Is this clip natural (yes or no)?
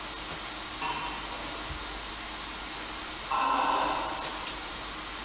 yes